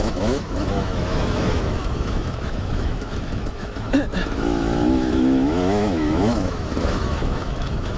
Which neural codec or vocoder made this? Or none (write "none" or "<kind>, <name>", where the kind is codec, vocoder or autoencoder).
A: autoencoder, DAC-VAE